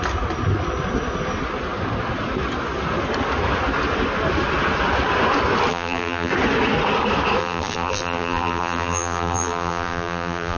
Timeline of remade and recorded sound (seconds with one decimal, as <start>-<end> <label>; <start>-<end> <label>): 0.0-5.7 recorded; 5.7-6.3 remade; 6.3-7.4 recorded; 7.4-10.6 remade